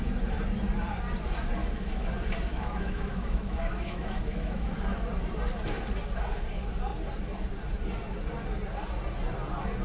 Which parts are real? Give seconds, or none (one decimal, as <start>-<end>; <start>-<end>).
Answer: 0.0-1.6; 2.1-2.5; 4.7-9.8